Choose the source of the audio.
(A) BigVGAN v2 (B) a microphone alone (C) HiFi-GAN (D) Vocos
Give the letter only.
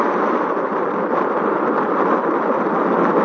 A